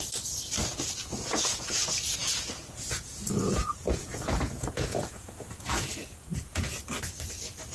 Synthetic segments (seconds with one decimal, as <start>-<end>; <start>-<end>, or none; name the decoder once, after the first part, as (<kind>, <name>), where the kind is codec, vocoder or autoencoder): 1.0-1.7 (vocoder, Vocos); 2.2-6.7